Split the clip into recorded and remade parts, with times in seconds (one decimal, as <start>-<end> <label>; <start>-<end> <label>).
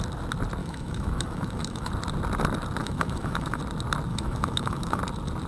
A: 0.0-0.6 recorded; 0.6-1.9 remade; 1.9-2.8 recorded; 2.8-3.6 remade; 3.6-4.1 recorded; 4.1-5.0 remade; 5.0-5.5 recorded